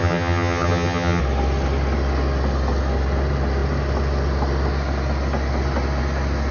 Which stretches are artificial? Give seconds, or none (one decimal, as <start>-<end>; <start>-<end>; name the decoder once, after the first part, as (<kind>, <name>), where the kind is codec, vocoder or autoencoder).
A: 0.0-1.2 (vocoder, HiFi-GAN)